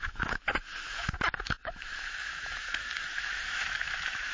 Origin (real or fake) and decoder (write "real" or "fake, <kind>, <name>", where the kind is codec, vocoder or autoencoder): fake, autoencoder, DAC-VAE